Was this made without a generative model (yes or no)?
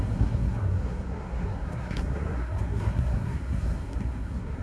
no